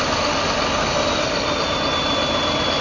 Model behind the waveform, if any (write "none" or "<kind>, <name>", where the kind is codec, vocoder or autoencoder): none